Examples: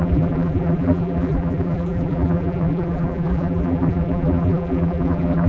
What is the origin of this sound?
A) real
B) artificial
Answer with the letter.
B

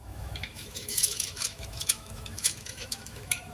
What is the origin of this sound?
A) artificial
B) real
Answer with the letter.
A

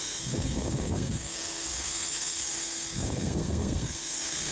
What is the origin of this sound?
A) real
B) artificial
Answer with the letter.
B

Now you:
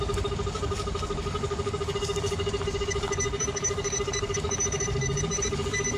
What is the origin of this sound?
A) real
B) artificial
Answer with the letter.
B